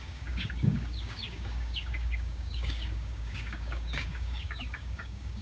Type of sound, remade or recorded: remade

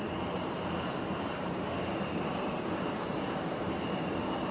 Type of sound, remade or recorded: remade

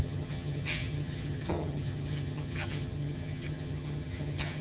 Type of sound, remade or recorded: remade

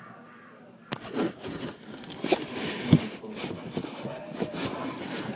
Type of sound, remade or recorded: recorded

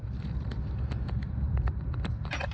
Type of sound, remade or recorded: remade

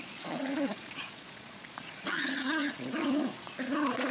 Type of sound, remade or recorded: remade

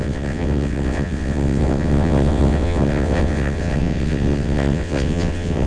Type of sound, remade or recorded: remade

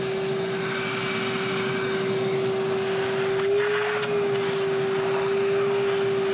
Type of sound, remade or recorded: recorded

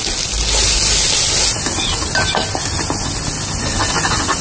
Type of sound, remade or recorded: recorded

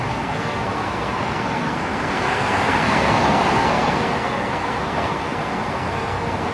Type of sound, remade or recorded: remade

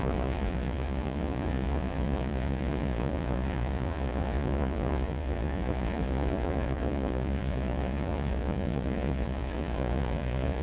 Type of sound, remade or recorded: remade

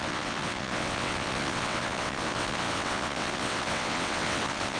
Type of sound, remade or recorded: remade